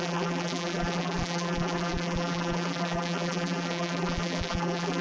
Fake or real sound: fake